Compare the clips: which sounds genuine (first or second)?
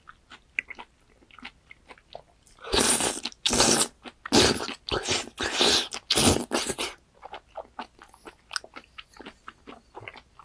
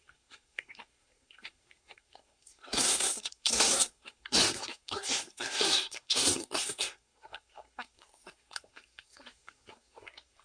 first